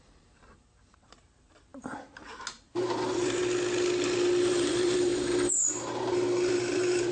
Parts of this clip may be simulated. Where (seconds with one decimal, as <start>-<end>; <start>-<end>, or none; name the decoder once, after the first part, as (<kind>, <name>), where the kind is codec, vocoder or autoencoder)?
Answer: 0.0-1.7 (vocoder, BigVGAN v2); 2.6-3.4; 4.4-7.1